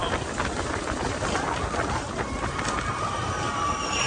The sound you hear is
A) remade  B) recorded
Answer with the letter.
B